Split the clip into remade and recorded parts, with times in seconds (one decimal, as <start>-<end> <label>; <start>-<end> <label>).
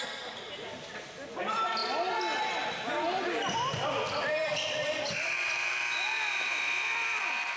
0.0-1.8 remade; 1.8-4.3 recorded; 4.3-7.6 remade